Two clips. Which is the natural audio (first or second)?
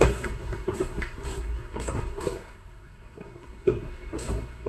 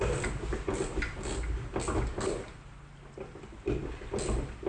second